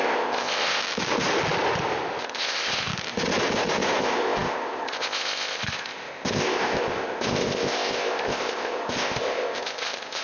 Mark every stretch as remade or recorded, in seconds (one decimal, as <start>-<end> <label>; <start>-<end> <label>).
0.0-0.8 remade; 0.8-2.2 recorded; 2.2-2.9 remade; 2.9-4.0 recorded; 4.0-10.2 remade